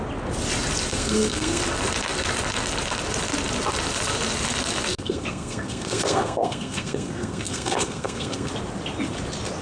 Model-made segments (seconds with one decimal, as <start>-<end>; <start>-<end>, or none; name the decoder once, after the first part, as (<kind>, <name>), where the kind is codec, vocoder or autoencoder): 0.9-1.6 (codec, SNAC); 4.9-8.5